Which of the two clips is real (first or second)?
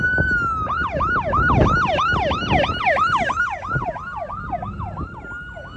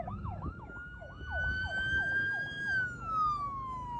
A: first